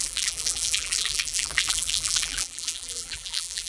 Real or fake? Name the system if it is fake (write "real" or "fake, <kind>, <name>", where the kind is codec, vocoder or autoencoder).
fake, vocoder, BigVGAN v2